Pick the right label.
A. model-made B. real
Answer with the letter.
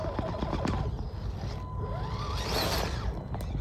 B